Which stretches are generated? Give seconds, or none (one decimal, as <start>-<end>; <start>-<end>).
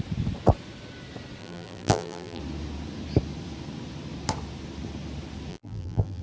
1.4-2.4; 5.5-6.2